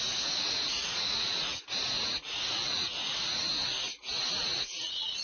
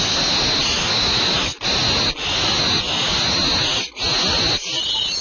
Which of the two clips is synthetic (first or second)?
first